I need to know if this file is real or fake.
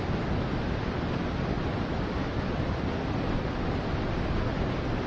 real